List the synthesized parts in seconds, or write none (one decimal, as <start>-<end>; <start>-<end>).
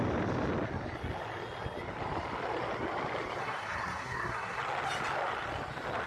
3.4-4.6